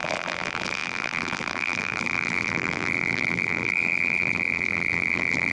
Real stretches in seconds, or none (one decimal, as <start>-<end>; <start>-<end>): none